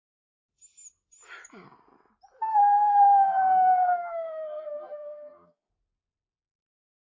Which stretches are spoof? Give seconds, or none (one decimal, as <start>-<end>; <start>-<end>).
2.5-5.7